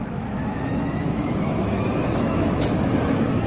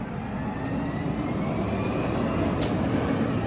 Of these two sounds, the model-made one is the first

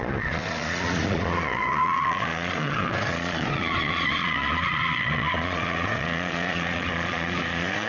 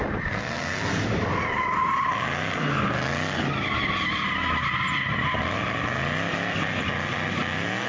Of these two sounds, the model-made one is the first